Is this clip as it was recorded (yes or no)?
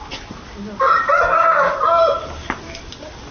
yes